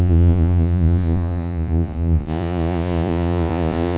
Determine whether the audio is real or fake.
fake